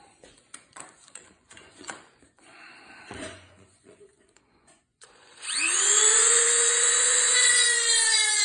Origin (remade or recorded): remade